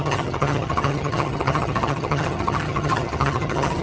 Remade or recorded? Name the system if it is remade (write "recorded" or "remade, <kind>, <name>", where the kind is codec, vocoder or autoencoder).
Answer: remade, vocoder, HiFi-GAN